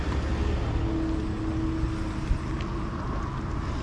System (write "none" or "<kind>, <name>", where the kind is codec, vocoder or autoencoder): none